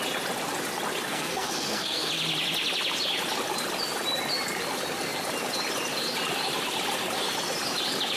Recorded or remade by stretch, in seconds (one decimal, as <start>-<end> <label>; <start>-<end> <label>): 0.0-1.1 recorded; 1.1-2.1 remade; 2.1-8.2 recorded